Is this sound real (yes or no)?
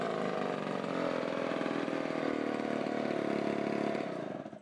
yes